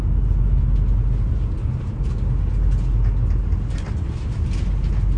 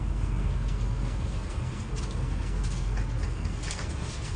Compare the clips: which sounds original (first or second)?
first